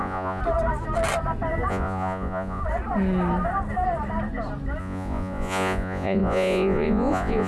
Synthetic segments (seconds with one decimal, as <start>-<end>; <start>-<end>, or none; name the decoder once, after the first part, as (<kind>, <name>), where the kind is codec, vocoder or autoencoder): 0.0-0.4 (vocoder, Vocos); 1.7-2.6; 4.8-7.5